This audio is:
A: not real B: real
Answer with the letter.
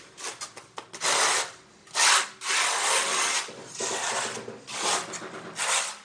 B